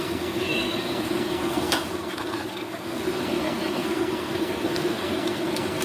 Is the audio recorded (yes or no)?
no